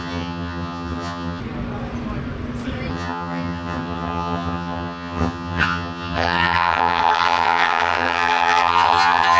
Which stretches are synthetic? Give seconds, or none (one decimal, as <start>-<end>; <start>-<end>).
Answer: 0.0-1.4; 2.9-9.4